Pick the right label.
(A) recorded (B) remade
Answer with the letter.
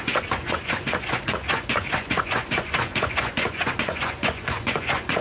B